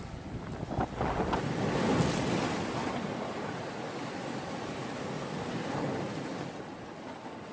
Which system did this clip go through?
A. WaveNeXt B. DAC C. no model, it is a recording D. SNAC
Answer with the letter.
C